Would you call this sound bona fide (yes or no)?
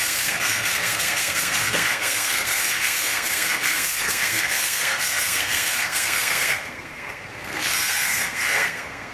no